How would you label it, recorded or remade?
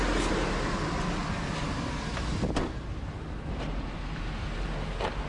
recorded